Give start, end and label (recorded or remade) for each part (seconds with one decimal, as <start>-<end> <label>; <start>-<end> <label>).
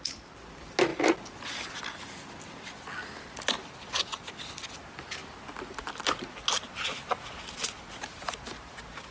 0.0-9.1 recorded